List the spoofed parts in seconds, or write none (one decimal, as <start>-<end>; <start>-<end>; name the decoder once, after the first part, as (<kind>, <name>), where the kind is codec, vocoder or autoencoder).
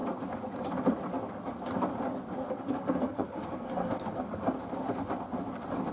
2.4-4.3 (codec, SNAC)